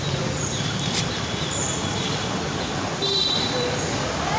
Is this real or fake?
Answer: real